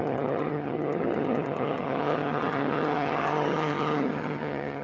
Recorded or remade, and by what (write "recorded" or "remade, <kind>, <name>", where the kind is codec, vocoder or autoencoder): remade, vocoder, HiFi-GAN